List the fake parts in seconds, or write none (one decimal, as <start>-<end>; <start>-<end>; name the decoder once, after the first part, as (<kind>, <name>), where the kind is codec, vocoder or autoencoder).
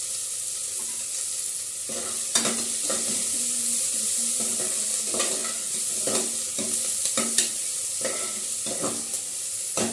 none